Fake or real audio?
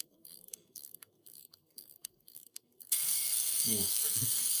fake